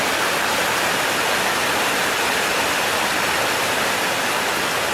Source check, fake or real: real